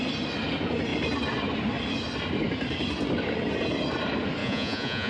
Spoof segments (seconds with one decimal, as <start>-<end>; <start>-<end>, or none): 4.4-5.1